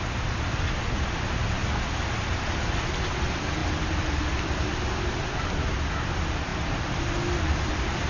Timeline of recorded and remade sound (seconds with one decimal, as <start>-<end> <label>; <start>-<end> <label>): 0.0-1.6 recorded; 1.6-3.1 remade; 3.1-3.6 recorded; 3.6-4.6 remade; 4.6-8.1 recorded

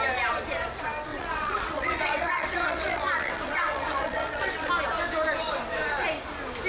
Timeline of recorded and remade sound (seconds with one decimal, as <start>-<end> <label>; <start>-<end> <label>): 0.0-1.1 recorded; 1.1-4.7 remade; 4.7-6.7 recorded

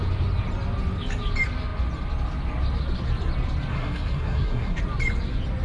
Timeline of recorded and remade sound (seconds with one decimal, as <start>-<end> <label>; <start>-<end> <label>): 0.0-3.7 recorded; 3.7-4.8 remade; 4.8-5.6 recorded

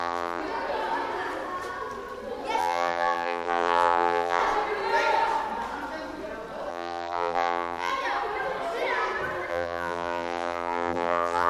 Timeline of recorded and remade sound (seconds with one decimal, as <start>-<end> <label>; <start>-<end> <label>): 0.0-0.4 remade; 0.4-2.6 recorded; 2.6-4.4 remade; 4.4-6.7 recorded; 6.7-7.9 remade; 7.9-9.5 recorded; 9.5-11.5 remade

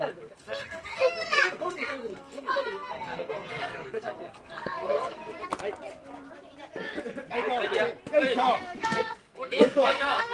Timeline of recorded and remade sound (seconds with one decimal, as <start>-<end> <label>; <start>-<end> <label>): 0.0-5.3 remade; 5.3-8.6 recorded; 8.6-10.3 remade

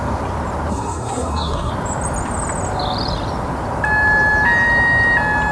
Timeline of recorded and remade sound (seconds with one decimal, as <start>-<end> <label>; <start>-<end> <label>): 0.0-0.7 recorded; 0.7-1.7 remade; 1.7-5.5 recorded

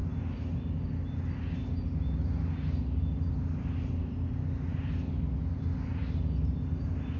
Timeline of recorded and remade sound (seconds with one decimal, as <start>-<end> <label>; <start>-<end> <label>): 0.0-7.2 recorded

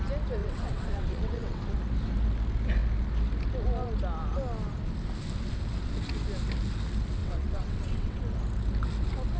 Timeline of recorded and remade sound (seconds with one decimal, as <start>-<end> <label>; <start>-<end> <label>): 0.0-0.4 recorded; 0.4-1.6 remade; 1.6-7.2 recorded; 7.2-8.2 remade; 8.2-9.4 recorded